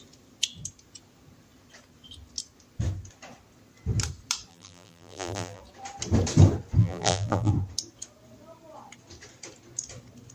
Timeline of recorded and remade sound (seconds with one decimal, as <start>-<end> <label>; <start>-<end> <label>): 0.0-4.5 recorded; 4.5-5.6 remade; 5.6-6.8 recorded; 6.8-7.5 remade; 7.5-10.3 recorded

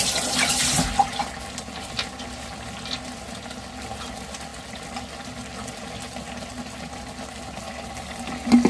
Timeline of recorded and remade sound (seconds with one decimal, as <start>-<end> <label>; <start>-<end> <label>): 0.0-8.7 recorded

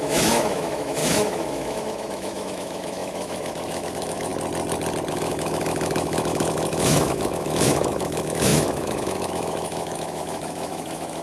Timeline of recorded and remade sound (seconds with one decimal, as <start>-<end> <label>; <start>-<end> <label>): 0.0-4.3 remade; 4.3-5.1 recorded; 5.1-11.2 remade

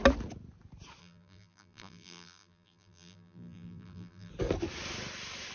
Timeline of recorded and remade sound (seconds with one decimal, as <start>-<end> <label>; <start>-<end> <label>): 0.0-1.0 recorded; 1.0-4.3 remade; 4.3-5.5 recorded

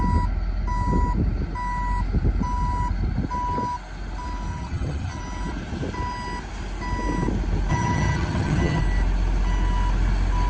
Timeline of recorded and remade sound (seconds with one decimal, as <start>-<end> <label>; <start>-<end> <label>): 0.0-4.5 recorded; 4.5-5.2 remade; 5.2-7.7 recorded; 7.7-8.8 remade; 8.8-10.5 recorded

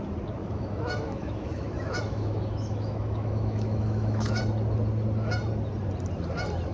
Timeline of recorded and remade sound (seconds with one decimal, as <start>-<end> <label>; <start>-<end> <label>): 0.0-0.4 recorded; 0.4-4.4 remade; 4.4-6.7 recorded

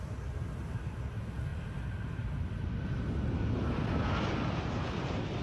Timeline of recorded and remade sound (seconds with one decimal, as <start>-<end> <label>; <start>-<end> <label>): 0.0-5.4 recorded